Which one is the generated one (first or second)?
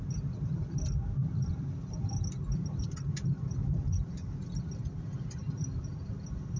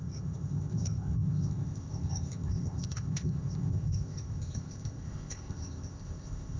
second